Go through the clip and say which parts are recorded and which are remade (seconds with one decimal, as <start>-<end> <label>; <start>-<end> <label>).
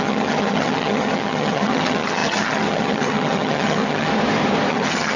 0.0-4.1 remade; 4.1-4.7 recorded; 4.7-5.2 remade